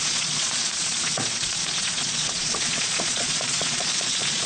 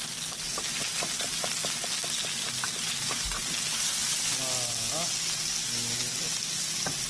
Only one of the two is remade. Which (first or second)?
first